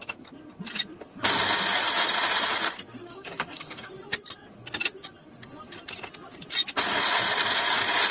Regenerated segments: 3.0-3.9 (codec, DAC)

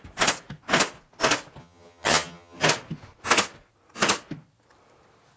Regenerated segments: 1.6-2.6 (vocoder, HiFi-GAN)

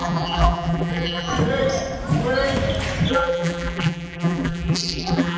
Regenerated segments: 0.0-1.3 (vocoder, BigVGAN v2); 3.1-5.4

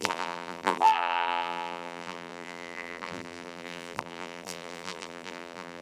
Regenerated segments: 0.0-5.8 (vocoder, BigVGAN v2)

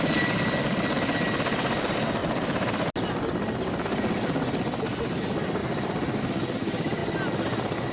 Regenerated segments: 2.2-2.9 (vocoder, BigVGAN v2); 5.6-6.2